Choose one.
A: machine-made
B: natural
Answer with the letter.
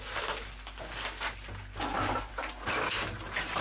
B